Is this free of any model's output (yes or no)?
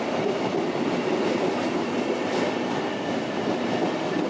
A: yes